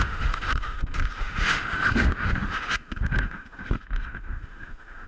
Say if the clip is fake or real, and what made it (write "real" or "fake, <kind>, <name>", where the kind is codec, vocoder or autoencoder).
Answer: fake, autoencoder, DAC-VAE